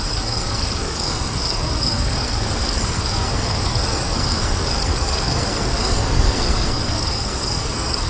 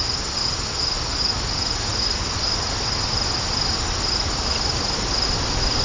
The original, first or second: second